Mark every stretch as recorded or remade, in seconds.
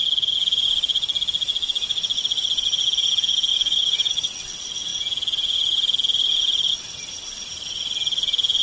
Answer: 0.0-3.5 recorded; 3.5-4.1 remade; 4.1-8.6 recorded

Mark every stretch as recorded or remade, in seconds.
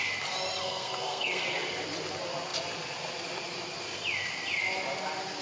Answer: 0.0-0.6 recorded; 0.6-1.4 remade; 1.4-5.4 recorded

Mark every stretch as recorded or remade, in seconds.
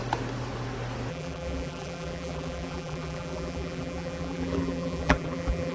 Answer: 0.0-1.1 recorded; 1.1-5.7 remade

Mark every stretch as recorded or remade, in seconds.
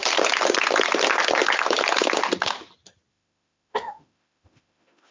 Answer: 0.0-3.1 recorded; 3.1-5.1 remade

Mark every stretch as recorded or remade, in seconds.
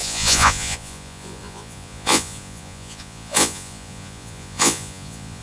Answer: 0.0-5.4 remade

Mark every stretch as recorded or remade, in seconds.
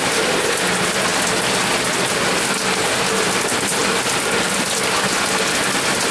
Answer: 0.0-6.1 recorded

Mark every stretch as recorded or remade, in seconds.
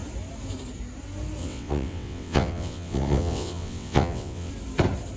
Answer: 0.0-1.4 recorded; 1.4-4.5 remade; 4.5-5.2 recorded